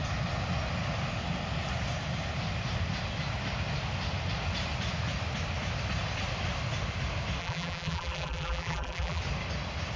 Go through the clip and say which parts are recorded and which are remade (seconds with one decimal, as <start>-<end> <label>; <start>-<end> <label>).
0.0-7.4 recorded; 7.4-9.2 remade; 9.2-10.0 recorded